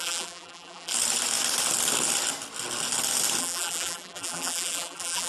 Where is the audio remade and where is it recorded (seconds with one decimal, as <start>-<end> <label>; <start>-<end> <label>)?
0.0-0.9 remade; 0.9-3.4 recorded; 3.4-5.3 remade